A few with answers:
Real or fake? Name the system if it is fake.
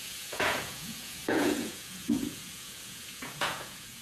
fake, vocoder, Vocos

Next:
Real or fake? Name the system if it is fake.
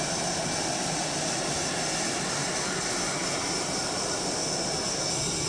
real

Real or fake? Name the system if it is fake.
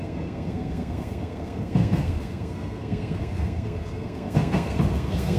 fake, codec, SNAC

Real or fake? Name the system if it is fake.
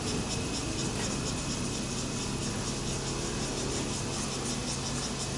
real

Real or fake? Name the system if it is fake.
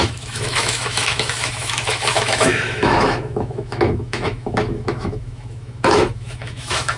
fake, autoencoder, DAC-VAE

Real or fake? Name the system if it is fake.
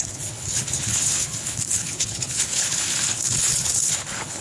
fake, codec, HILCodec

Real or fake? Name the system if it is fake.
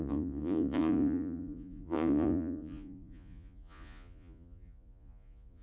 fake, vocoder, Vocos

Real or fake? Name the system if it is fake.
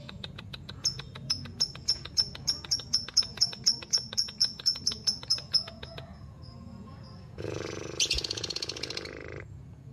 fake, vocoder, Vocos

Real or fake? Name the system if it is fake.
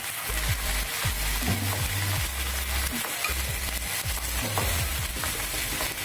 real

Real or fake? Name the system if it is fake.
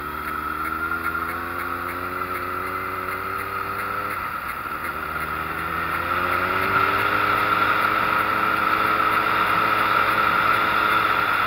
real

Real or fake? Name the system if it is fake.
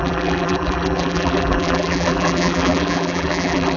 fake, vocoder, BigVGAN v2